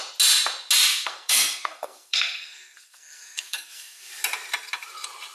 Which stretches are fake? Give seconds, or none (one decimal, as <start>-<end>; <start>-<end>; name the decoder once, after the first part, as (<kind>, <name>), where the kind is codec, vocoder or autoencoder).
0.9-4.1 (codec, SNAC)

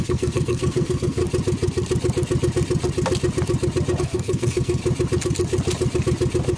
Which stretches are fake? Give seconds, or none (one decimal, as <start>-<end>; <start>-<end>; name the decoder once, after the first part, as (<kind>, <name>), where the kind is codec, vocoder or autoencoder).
0.0-1.2 (codec, SNAC); 4.0-4.8

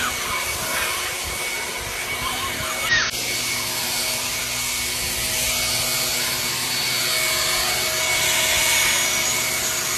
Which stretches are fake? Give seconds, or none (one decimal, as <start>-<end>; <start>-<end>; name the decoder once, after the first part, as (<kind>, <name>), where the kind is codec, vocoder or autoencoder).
none

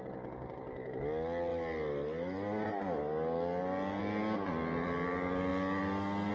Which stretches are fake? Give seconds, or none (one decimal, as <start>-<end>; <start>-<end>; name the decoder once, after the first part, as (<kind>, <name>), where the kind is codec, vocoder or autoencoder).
none

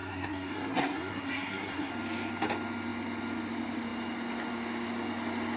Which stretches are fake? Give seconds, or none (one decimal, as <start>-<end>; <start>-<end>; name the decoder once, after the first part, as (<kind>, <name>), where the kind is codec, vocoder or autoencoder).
0.0-1.9 (codec, SNAC)